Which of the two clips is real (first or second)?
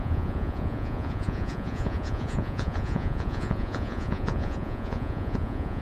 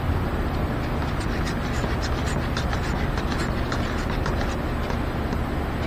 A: second